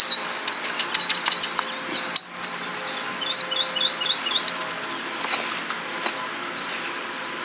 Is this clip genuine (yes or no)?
yes